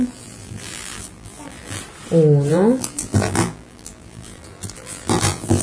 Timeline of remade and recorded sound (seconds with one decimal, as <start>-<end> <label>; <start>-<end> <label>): 0.0-1.8 remade; 1.8-2.5 recorded; 2.5-5.6 remade